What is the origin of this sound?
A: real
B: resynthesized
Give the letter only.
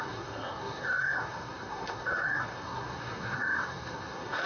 B